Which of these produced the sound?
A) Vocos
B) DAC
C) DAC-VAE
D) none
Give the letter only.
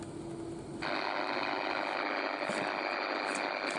D